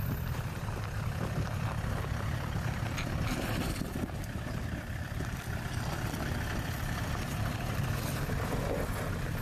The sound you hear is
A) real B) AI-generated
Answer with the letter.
B